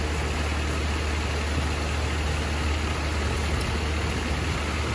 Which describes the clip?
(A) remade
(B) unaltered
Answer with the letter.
B